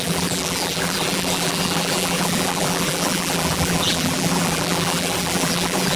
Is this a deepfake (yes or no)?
yes